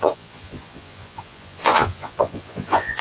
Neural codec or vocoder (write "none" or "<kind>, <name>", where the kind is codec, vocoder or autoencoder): vocoder, Vocos